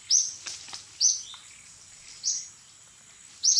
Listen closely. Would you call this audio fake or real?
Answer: real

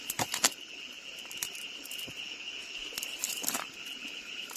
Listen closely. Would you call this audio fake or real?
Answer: real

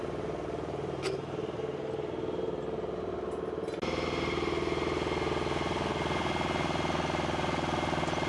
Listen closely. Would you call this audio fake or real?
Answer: real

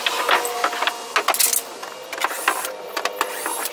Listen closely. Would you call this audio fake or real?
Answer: real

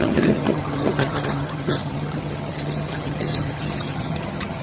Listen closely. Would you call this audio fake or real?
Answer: fake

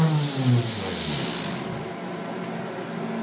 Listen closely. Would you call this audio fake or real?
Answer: real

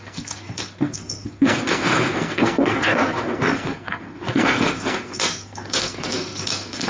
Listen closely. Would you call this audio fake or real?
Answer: fake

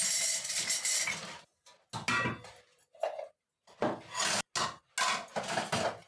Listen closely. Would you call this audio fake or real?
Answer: real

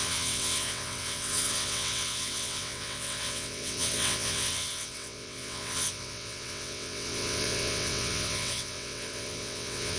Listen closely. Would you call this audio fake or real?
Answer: fake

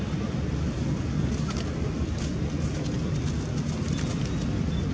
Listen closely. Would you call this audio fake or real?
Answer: real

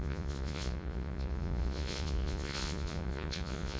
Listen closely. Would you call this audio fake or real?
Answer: fake